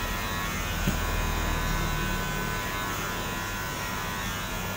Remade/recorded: recorded